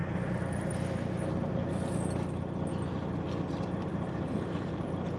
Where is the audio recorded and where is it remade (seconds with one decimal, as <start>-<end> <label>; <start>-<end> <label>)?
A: 0.0-3.9 recorded; 3.9-4.7 remade; 4.7-5.2 recorded